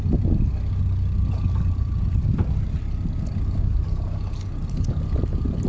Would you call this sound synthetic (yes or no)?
no